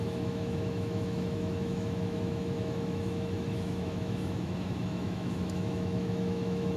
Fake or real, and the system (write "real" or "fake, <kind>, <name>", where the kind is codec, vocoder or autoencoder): fake, autoencoder, DAC-VAE